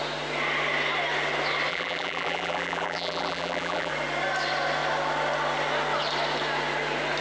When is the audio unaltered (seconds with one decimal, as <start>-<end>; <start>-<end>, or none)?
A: 0.0-1.7; 3.9-7.2